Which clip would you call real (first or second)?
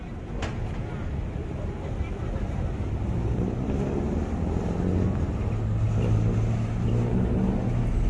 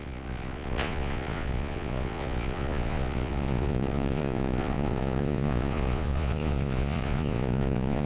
first